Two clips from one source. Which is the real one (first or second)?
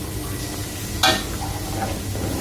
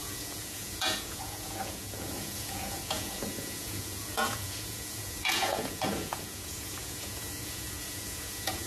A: first